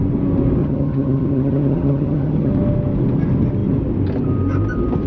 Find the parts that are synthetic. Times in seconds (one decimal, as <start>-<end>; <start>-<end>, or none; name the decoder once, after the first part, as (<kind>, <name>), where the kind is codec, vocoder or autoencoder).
0.6-2.5 (vocoder, HiFi-GAN)